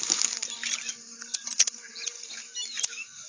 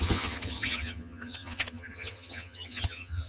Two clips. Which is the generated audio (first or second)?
second